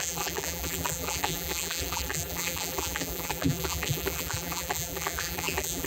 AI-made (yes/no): yes